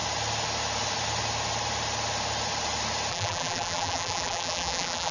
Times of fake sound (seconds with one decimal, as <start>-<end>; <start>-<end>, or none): 3.1-5.1